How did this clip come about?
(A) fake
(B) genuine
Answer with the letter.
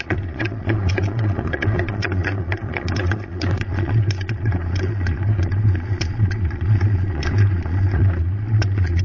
A